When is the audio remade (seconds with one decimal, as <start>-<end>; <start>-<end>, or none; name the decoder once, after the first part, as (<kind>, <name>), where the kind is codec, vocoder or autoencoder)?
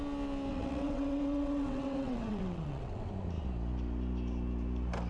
0.5-3.1 (vocoder, WaveNeXt)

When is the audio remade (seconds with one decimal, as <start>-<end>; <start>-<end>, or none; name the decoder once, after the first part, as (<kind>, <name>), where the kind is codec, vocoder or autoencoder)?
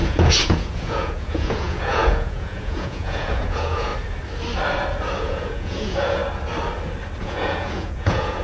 0.0-3.9 (vocoder, Vocos); 5.2-6.2; 7.2-8.4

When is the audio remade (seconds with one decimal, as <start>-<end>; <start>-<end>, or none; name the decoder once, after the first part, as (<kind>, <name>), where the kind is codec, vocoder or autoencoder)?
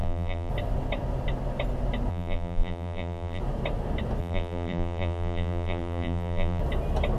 0.0-0.5 (vocoder, BigVGAN v2); 2.1-3.4; 4.2-6.6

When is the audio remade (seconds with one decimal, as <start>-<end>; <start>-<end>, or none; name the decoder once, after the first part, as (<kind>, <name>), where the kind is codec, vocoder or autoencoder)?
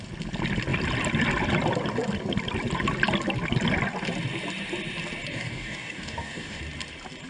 5.3-6.6 (codec, DAC)